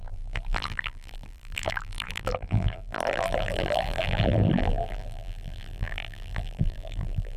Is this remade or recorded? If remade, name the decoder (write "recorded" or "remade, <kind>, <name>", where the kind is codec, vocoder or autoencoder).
remade, vocoder, BigVGAN v2